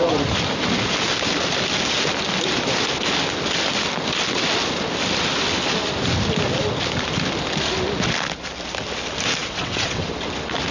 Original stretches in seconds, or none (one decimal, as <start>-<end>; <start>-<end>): 0.0-9.4; 10.1-10.7